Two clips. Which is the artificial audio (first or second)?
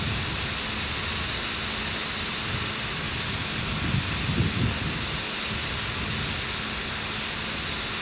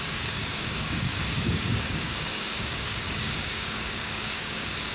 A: second